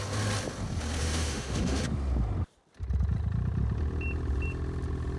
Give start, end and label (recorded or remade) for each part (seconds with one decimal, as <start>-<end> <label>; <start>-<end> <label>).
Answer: 0.0-1.0 recorded; 1.0-1.8 remade; 1.8-5.2 recorded